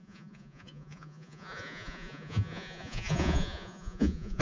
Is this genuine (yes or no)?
no